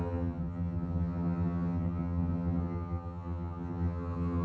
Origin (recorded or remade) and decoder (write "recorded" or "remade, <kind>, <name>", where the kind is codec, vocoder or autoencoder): remade, vocoder, HiFi-GAN